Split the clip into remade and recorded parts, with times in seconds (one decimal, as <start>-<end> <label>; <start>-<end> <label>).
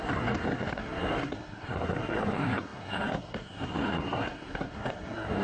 0.0-5.4 remade